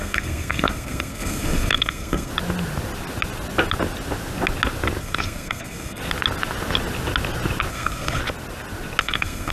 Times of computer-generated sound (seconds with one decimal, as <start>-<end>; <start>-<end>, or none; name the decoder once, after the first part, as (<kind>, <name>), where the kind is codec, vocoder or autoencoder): 0.0-2.3 (codec, SNAC); 5.0-6.0; 7.7-8.2; 9.0-9.5